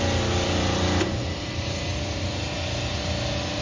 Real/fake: real